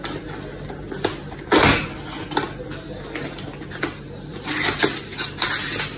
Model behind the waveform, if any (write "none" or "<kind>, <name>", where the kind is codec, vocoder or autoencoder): none